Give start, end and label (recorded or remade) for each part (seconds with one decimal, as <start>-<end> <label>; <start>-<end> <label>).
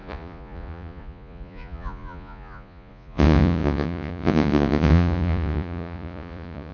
0.0-6.7 remade